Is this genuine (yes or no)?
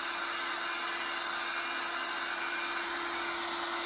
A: yes